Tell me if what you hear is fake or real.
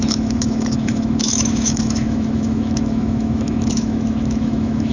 fake